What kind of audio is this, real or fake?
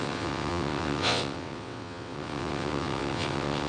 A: fake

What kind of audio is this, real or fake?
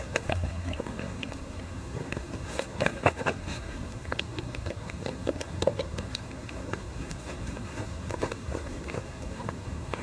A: fake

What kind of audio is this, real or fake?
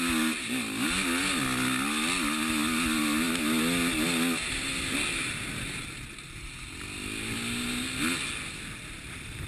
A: real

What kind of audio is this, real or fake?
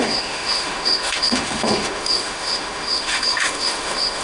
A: fake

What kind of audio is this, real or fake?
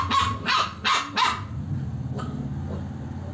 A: real